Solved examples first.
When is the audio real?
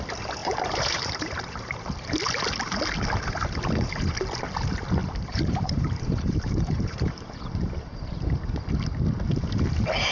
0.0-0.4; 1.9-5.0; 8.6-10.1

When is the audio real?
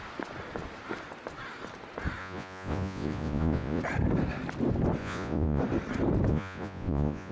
0.0-2.2; 3.8-5.0; 5.6-6.3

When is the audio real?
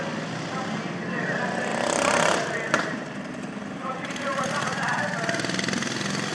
0.0-1.7; 4.6-6.3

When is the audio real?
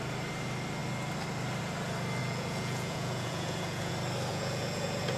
0.0-2.2; 3.9-4.3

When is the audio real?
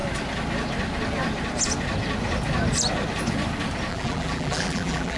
0.0-3.9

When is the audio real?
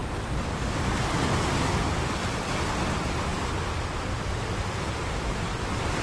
0.0-3.3; 5.3-6.0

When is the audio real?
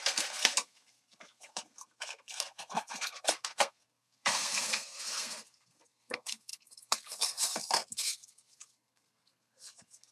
none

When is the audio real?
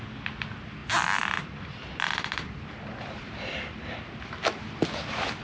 0.0-0.8; 4.0-5.4